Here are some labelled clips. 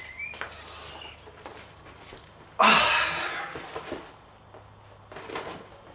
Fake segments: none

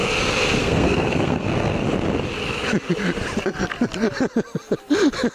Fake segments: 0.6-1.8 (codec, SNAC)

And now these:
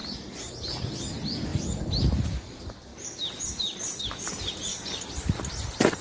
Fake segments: none